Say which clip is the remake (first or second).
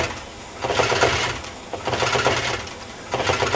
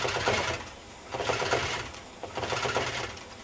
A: second